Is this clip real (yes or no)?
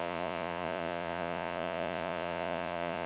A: no